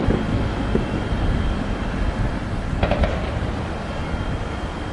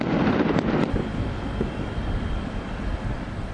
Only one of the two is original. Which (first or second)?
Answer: first